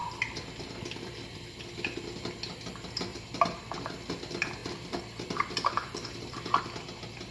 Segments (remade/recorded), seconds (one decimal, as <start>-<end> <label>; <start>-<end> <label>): 0.0-3.1 recorded; 3.1-3.8 remade; 3.8-4.6 recorded; 4.6-6.6 remade; 6.6-7.3 recorded